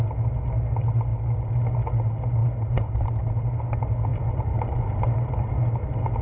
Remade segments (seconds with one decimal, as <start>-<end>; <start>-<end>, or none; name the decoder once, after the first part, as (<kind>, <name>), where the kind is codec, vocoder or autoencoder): 2.4-3.3 (vocoder, BigVGAN v2); 4.1-5.3